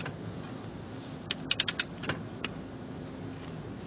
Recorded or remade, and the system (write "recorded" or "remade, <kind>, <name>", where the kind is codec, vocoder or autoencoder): recorded